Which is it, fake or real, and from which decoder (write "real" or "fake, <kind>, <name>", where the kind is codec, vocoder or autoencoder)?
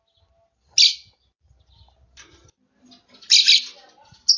real